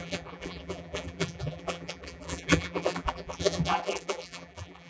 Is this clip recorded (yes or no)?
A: no